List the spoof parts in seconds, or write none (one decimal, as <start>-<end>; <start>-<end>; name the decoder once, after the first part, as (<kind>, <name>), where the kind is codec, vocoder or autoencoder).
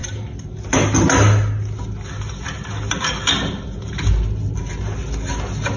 none